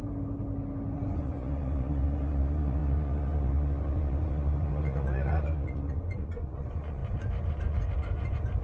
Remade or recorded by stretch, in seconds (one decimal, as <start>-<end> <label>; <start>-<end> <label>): 0.0-0.9 recorded; 0.9-8.6 remade